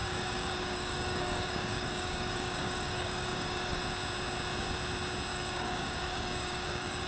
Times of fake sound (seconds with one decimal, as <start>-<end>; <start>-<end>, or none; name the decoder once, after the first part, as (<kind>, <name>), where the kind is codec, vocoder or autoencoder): 0.0-3.8 (codec, DAC); 5.3-7.1